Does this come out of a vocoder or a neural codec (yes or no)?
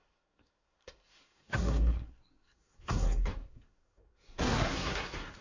yes